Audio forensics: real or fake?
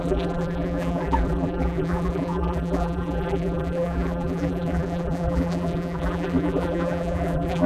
fake